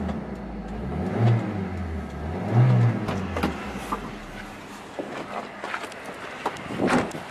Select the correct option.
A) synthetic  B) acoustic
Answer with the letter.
B